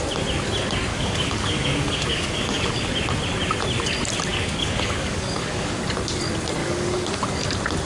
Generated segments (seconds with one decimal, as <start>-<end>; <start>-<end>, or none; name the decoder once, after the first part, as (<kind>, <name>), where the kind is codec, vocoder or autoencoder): 0.9-2.7 (codec, DAC); 4.3-5.8; 6.6-7.2